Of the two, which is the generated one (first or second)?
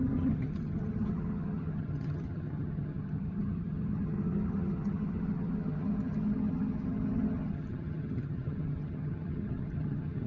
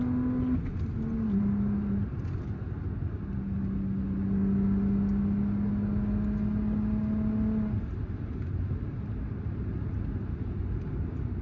first